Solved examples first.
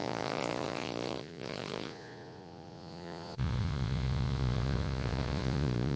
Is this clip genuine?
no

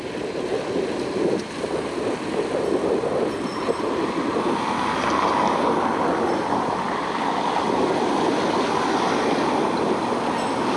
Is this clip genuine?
yes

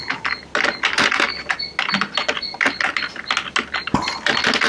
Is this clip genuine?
yes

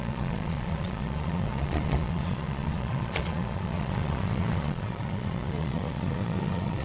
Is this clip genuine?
no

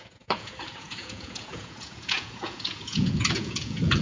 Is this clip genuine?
no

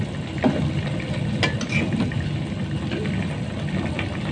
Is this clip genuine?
yes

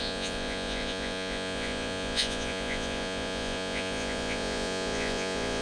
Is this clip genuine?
no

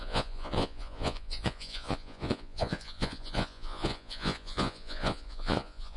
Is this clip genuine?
no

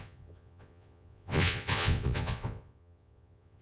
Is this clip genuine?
no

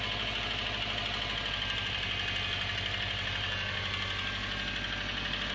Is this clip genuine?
yes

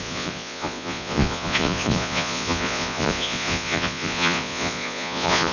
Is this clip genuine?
no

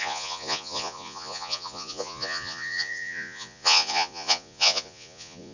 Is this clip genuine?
no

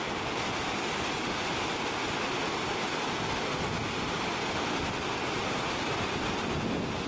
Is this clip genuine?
yes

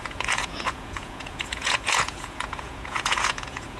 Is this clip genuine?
no